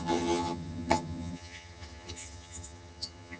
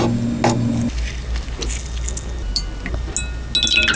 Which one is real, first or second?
second